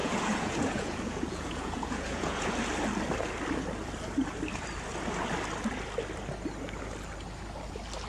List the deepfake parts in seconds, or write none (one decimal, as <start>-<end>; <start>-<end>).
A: 0.0-2.5